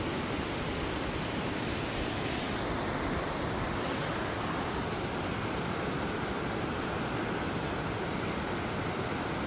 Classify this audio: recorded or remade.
recorded